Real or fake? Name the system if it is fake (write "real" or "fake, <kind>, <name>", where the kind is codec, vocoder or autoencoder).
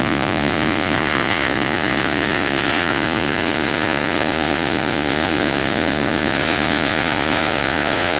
fake, vocoder, Vocos